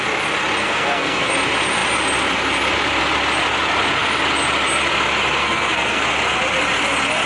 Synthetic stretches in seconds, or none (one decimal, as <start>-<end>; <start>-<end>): 0.6-1.3; 5.4-6.0